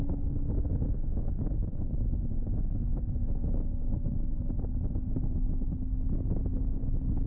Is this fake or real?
real